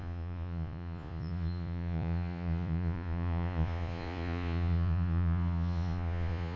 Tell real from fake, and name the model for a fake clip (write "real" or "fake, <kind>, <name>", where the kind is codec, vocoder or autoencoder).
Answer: fake, vocoder, Vocos